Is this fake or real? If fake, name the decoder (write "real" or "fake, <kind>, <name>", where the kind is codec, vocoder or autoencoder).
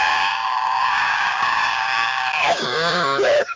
fake, codec, DAC